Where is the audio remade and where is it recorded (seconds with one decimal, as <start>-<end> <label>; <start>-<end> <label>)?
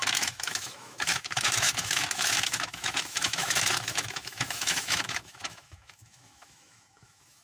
0.0-7.4 remade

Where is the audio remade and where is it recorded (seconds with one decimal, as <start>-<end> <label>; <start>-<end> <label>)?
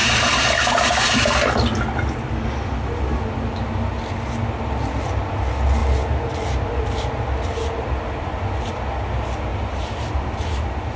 0.0-9.5 recorded; 9.5-10.2 remade; 10.2-11.0 recorded